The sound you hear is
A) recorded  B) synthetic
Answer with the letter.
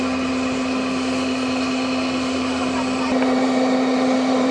B